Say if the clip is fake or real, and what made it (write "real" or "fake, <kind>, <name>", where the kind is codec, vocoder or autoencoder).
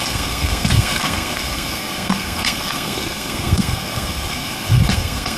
fake, codec, SNAC